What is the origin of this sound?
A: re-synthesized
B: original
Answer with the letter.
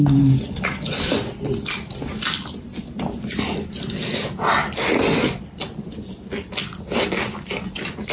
B